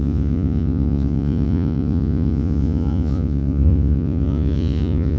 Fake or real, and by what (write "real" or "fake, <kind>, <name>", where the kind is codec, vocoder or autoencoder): fake, vocoder, Vocos